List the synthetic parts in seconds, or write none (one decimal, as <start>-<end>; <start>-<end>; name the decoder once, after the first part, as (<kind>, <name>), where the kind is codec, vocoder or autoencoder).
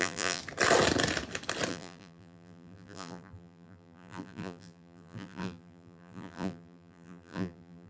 0.0-0.4 (vocoder, BigVGAN v2); 1.7-7.9